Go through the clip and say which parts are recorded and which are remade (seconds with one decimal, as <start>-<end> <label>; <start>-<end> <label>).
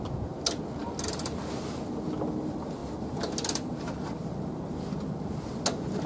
0.0-6.1 recorded